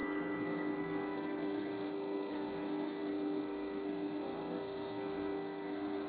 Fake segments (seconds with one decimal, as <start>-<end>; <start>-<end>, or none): 0.0-6.1